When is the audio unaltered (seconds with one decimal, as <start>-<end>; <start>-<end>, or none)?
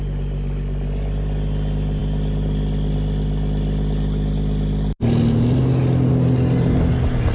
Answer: 0.0-7.3